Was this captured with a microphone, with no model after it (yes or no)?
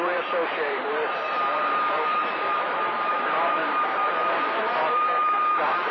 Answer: no